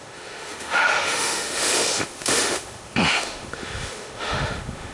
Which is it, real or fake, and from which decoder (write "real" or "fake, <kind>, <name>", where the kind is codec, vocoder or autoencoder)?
fake, autoencoder, DAC-VAE